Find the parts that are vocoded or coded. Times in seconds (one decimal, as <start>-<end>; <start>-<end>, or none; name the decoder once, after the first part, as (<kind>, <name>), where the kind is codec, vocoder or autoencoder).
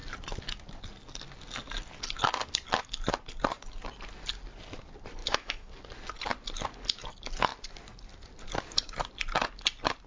5.2-5.7 (autoencoder, DAC-VAE)